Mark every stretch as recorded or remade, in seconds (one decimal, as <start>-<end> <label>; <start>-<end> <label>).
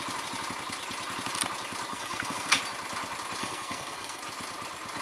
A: 0.0-1.9 recorded; 1.9-2.6 remade; 2.6-3.4 recorded; 3.4-4.2 remade; 4.2-5.0 recorded